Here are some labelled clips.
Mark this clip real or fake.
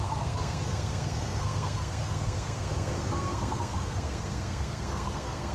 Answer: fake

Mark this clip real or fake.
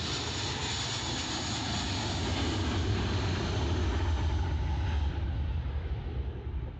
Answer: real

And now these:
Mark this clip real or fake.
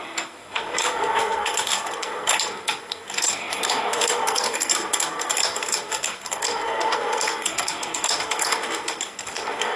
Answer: fake